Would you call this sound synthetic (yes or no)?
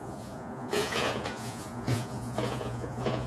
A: yes